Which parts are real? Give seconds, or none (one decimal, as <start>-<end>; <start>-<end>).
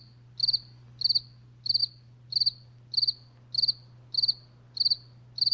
0.0-5.5